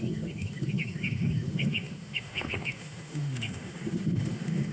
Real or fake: fake